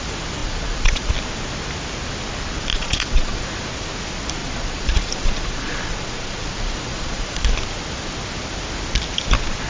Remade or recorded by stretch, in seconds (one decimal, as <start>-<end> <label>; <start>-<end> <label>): 0.0-0.4 recorded; 0.4-1.1 remade; 1.1-2.7 recorded; 2.7-3.4 remade; 3.4-4.4 recorded; 4.4-7.4 remade; 7.4-9.7 recorded